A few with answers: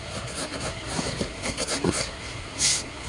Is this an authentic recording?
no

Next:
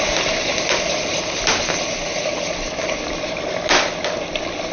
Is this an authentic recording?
yes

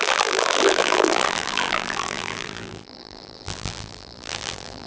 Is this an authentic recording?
no